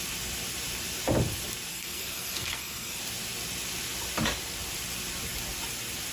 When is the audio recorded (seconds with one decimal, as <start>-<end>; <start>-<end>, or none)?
0.0-1.7; 3.0-6.1